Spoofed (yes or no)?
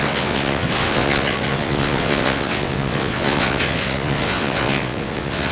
yes